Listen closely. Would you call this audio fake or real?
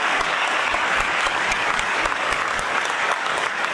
fake